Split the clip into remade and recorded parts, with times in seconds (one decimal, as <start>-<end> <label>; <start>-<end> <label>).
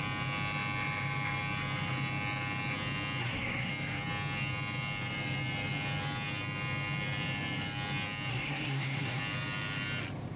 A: 0.0-3.2 recorded; 3.2-3.7 remade; 3.7-8.3 recorded; 8.3-9.2 remade; 9.2-10.4 recorded